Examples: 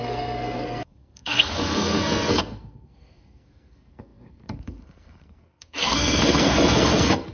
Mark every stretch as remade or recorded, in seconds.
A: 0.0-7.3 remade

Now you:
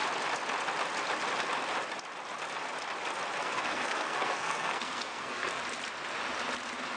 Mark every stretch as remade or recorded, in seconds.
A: 0.0-3.4 recorded; 3.4-5.6 remade; 5.6-7.0 recorded

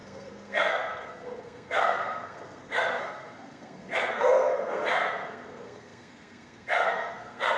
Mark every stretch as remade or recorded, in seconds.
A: 0.0-7.6 remade

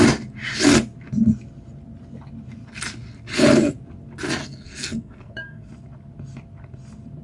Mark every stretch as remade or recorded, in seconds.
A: 0.0-4.4 recorded; 4.4-5.7 remade; 5.7-7.2 recorded